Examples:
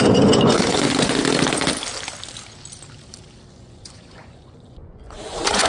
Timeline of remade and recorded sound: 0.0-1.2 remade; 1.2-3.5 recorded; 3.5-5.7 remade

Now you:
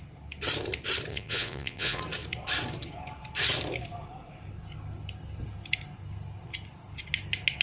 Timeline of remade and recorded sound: 0.0-1.1 recorded; 1.1-2.0 remade; 2.0-7.6 recorded

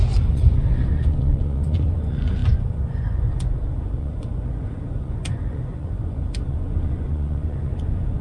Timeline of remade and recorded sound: 0.0-8.2 remade

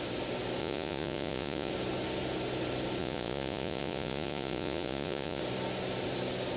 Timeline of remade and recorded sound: 0.0-0.6 recorded; 0.6-1.7 remade; 1.7-3.0 recorded; 3.0-5.4 remade; 5.4-6.6 recorded